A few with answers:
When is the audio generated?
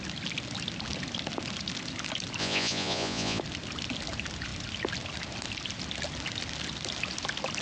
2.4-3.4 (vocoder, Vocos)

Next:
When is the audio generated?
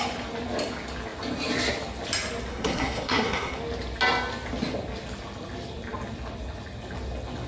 2.5-3.6 (codec, SNAC)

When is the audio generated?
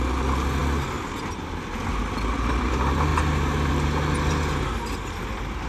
none